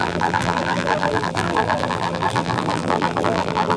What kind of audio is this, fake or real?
fake